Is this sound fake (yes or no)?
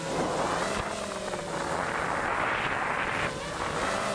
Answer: no